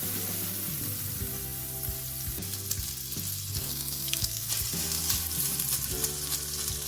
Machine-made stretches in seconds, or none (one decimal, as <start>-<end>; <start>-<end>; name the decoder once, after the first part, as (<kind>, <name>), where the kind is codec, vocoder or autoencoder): 3.6-4.5 (codec, SNAC)